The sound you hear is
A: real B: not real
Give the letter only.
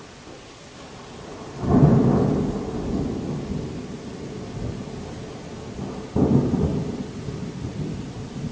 A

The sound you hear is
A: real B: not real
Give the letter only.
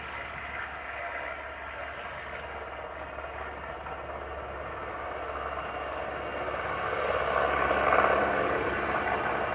A